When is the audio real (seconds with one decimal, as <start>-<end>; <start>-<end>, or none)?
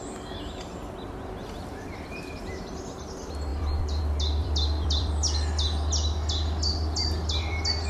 0.0-1.4; 2.8-3.5; 4.0-4.4; 5.1-7.9